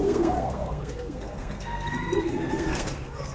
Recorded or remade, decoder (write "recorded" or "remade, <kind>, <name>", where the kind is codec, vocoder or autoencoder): remade, codec, SNAC